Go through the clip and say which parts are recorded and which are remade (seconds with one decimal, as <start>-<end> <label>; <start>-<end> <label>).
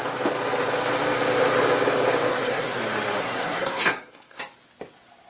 0.0-2.3 recorded; 2.3-2.8 remade; 2.8-3.2 recorded; 3.2-4.4 remade; 4.4-5.3 recorded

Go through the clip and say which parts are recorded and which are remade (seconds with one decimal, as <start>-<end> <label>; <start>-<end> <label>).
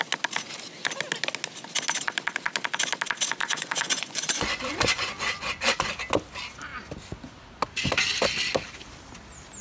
0.0-3.4 recorded; 3.4-5.9 remade; 5.9-9.6 recorded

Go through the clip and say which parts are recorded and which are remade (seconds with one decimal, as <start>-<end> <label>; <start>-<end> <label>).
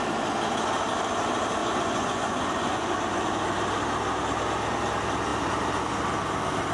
0.0-1.6 recorded; 1.6-2.9 remade; 2.9-6.7 recorded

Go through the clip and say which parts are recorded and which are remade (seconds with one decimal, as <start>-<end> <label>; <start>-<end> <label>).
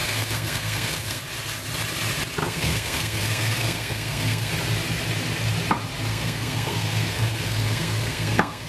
0.0-1.2 remade; 1.2-2.4 recorded; 2.4-4.5 remade; 4.5-6.1 recorded; 6.1-8.7 remade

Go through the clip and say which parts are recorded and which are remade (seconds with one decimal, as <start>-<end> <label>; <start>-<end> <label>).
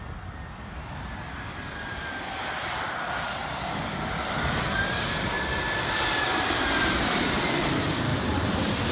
0.0-3.4 remade; 3.4-3.9 recorded; 3.9-8.9 remade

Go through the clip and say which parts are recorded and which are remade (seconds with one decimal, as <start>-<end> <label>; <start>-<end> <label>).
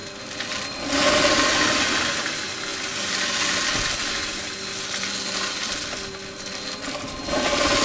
0.0-7.8 recorded